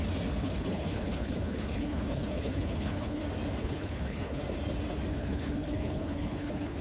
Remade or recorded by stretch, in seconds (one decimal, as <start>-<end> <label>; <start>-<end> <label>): 0.0-0.4 recorded; 0.4-3.2 remade; 3.2-3.6 recorded; 3.6-4.4 remade; 4.4-5.1 recorded; 5.1-6.8 remade